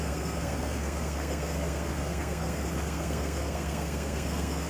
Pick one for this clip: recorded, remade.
remade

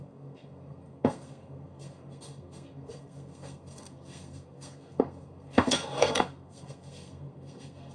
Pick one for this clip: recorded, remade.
remade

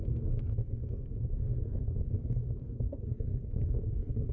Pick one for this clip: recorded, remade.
remade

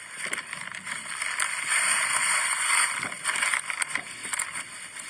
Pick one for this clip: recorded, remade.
recorded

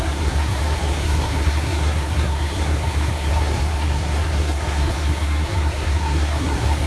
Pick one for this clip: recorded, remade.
remade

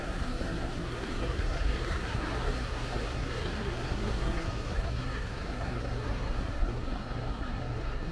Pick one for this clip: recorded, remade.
remade